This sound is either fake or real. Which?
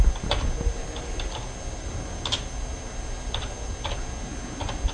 real